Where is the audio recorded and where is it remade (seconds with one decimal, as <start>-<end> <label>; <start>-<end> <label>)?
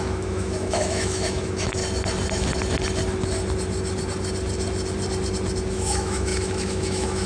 0.0-1.8 remade; 1.8-5.7 recorded; 5.7-7.3 remade